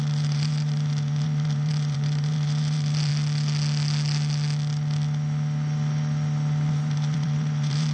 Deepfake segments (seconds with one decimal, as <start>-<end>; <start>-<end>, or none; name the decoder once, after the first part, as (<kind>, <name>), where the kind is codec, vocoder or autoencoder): 0.0-3.1 (vocoder, BigVGAN v2); 6.7-7.9